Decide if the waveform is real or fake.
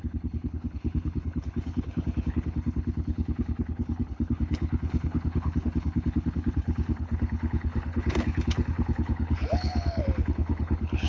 fake